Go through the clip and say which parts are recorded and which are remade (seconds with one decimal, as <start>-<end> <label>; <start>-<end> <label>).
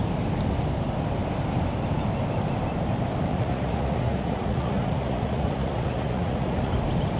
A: 0.0-3.3 recorded; 3.3-6.7 remade; 6.7-7.2 recorded